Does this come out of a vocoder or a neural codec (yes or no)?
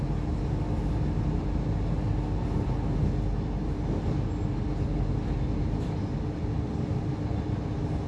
no